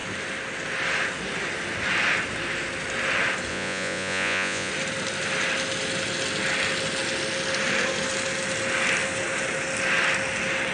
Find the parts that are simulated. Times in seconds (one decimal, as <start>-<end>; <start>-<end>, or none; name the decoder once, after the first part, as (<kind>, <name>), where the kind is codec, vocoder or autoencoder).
3.5-4.7 (vocoder, Vocos)